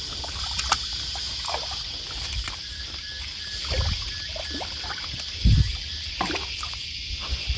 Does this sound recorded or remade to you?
recorded